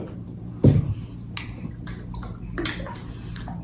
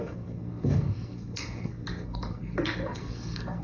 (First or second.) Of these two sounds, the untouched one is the first